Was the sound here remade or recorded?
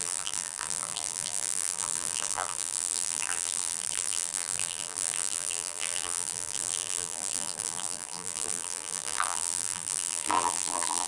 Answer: remade